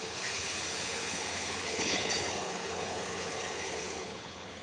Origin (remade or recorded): remade